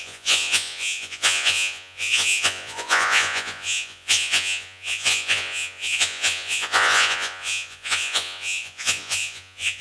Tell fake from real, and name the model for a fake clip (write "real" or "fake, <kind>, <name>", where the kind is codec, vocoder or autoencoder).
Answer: fake, vocoder, Vocos